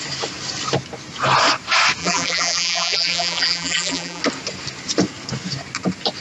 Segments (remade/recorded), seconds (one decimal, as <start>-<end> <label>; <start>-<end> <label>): 0.0-2.0 recorded; 2.0-4.2 remade; 4.2-6.2 recorded

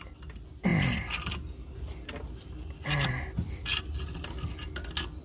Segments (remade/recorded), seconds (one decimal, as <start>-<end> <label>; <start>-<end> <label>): 0.0-5.2 recorded

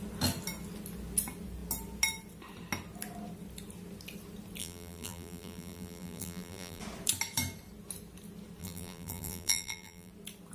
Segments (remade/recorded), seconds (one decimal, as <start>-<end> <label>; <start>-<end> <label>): 0.0-4.6 recorded; 4.6-6.8 remade; 6.8-8.6 recorded; 8.6-10.1 remade; 10.1-10.5 recorded

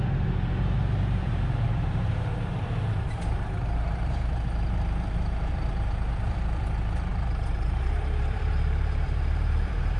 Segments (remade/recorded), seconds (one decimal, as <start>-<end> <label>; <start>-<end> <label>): 0.0-10.0 remade

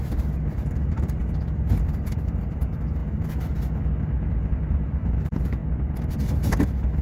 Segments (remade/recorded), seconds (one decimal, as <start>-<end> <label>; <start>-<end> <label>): 0.0-1.2 remade; 1.2-1.9 recorded; 1.9-3.0 remade; 3.0-4.1 recorded; 4.1-5.6 remade; 5.6-7.0 recorded

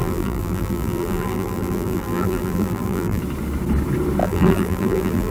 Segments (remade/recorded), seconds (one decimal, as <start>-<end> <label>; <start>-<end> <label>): 0.0-3.2 remade; 3.2-4.2 recorded; 4.2-5.3 remade